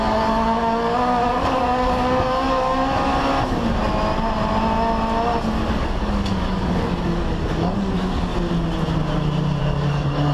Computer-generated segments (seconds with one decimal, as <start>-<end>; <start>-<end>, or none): 0.0-3.1; 5.7-8.3; 9.6-10.3